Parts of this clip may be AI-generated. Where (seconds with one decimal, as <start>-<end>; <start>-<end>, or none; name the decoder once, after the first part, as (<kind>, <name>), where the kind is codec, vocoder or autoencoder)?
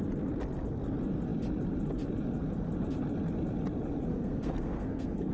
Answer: 4.1-5.3 (codec, SNAC)